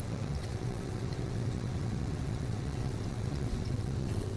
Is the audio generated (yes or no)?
yes